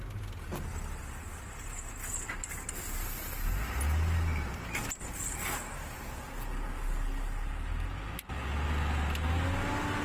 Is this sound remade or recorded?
recorded